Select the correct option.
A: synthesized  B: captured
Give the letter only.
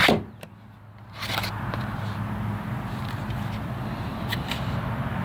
B